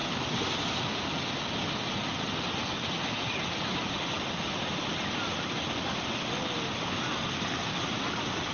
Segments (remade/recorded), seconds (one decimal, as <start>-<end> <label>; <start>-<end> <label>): 0.0-8.5 recorded